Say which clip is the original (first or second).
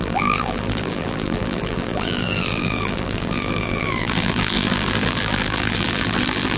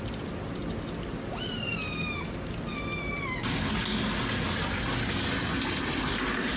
second